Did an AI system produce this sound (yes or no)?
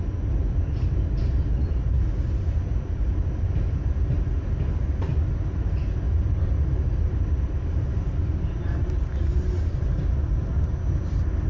no